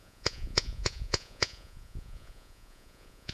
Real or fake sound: fake